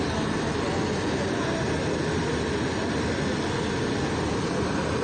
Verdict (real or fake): real